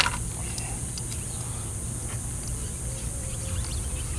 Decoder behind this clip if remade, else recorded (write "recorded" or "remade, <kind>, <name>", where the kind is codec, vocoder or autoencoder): recorded